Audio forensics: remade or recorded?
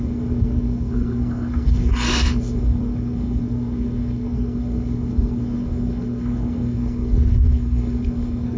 remade